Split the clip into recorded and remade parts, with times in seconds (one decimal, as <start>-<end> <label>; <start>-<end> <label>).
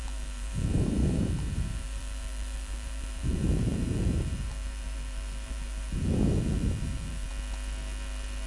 0.0-7.3 remade; 7.3-8.5 recorded